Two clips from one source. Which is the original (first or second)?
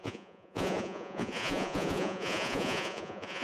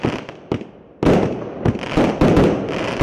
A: second